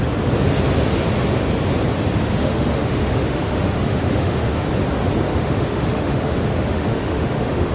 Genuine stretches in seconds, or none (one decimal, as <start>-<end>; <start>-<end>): 0.0-2.2; 4.7-5.3